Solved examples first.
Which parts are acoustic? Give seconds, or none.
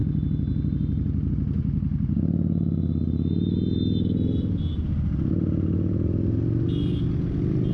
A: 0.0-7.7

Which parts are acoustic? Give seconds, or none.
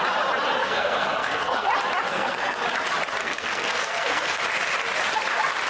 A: 0.0-0.6; 1.7-2.1; 2.6-3.2; 4.4-5.7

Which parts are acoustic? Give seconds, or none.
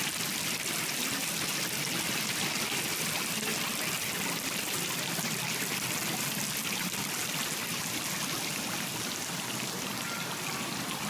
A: 0.0-11.1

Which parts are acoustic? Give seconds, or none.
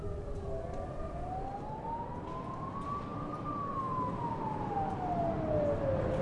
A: 0.0-6.2